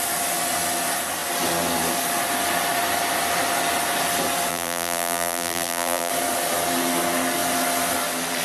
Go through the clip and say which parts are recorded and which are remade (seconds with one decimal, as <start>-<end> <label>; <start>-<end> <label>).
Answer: 0.0-4.5 recorded; 4.5-6.1 remade; 6.1-8.4 recorded